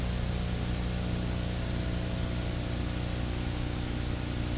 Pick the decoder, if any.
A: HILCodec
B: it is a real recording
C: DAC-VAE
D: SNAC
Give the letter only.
B